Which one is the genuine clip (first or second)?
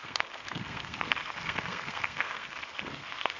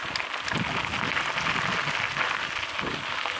second